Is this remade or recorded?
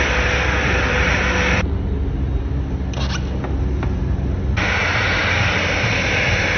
recorded